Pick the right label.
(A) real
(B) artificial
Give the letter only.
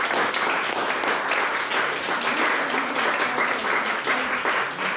A